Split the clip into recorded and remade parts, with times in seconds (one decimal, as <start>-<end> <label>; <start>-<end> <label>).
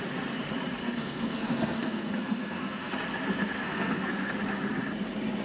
0.0-0.8 recorded; 0.8-2.9 remade; 2.9-3.3 recorded; 3.3-4.3 remade; 4.3-5.4 recorded